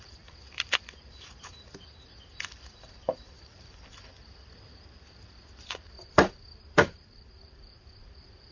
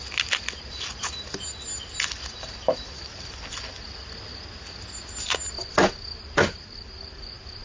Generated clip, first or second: first